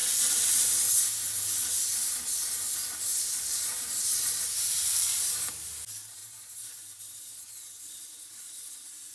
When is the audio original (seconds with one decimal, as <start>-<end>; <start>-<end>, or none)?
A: 0.8-3.1; 5.2-6.2; 7.3-9.1